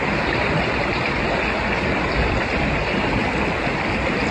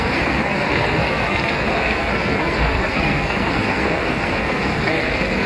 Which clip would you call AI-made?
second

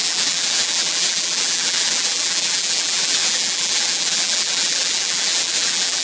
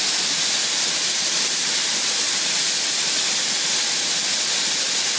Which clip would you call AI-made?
first